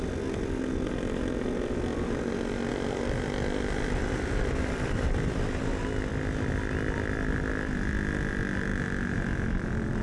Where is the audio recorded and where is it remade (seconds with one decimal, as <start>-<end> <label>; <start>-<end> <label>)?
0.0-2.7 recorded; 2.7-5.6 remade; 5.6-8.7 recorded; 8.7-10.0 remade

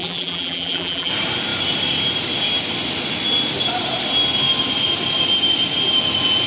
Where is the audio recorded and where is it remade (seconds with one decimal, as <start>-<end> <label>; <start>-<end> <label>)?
0.0-1.1 remade; 1.1-6.5 recorded

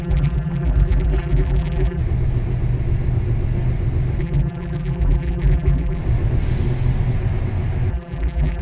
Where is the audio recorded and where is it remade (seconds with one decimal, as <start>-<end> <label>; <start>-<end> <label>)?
0.0-2.0 remade; 2.0-4.2 recorded; 4.2-6.0 remade; 6.0-7.9 recorded; 7.9-8.6 remade

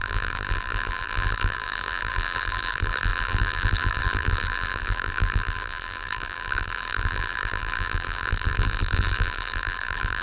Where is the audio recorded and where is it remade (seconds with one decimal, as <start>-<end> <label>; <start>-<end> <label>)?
0.0-10.2 remade